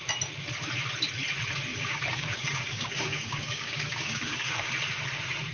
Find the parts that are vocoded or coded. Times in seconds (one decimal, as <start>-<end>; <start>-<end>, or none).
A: 1.7-4.7